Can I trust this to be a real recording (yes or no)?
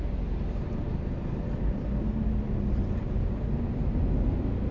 yes